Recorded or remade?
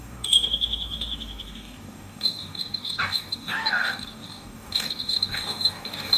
remade